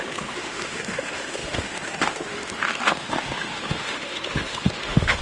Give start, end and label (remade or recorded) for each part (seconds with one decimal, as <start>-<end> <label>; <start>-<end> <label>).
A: 0.0-5.2 remade